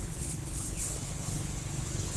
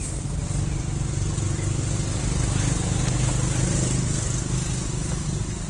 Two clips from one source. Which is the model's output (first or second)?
first